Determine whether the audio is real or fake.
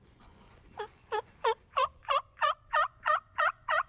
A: fake